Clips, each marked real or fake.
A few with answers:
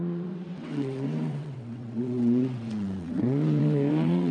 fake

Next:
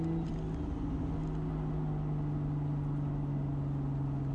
real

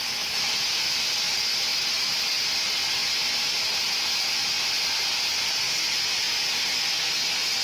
real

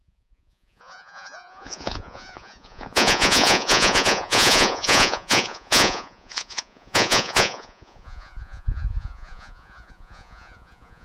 fake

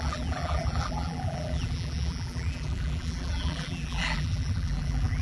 fake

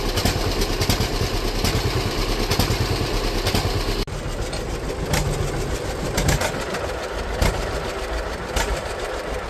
real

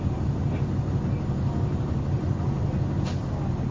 real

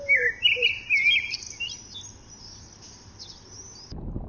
real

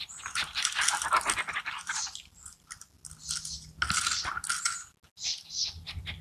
real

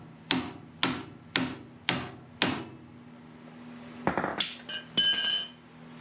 real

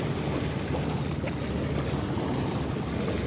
real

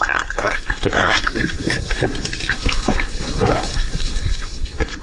fake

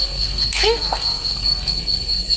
fake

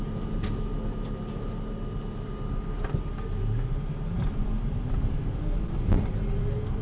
real